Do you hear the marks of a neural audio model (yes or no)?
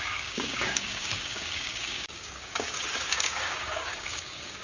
yes